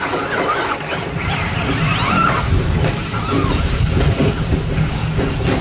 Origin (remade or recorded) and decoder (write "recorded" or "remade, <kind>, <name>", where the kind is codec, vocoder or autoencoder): recorded